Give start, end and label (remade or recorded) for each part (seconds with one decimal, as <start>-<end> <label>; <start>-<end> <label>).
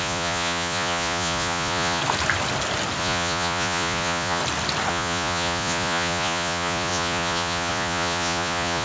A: 0.0-2.0 remade; 2.0-3.0 recorded; 3.0-4.4 remade; 4.4-4.9 recorded; 4.9-8.8 remade